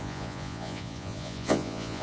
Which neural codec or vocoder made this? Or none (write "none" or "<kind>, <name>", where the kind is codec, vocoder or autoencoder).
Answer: vocoder, Vocos